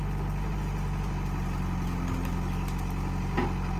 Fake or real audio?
real